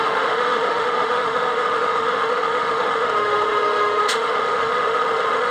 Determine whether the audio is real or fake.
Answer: fake